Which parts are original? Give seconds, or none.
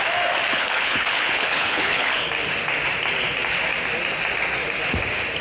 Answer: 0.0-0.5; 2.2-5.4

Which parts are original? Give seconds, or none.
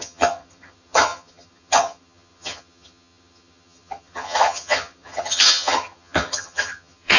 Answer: none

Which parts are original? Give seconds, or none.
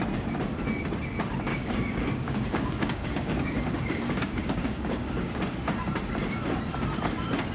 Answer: 0.0-1.5; 5.4-7.5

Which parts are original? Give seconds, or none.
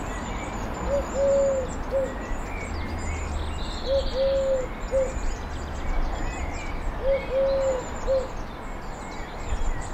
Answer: 0.0-9.9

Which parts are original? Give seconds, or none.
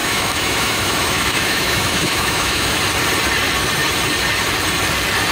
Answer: 2.8-5.3